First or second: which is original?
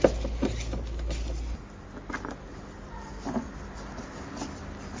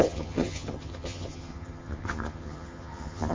first